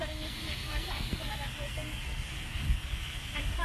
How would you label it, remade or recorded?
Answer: remade